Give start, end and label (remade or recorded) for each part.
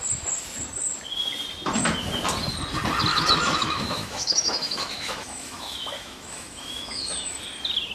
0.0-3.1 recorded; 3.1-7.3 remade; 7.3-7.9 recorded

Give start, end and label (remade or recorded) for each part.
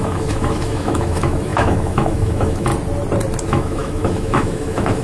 0.0-2.7 remade; 2.7-3.4 recorded; 3.4-5.0 remade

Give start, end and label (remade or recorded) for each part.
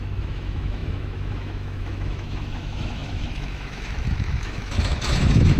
0.0-5.6 remade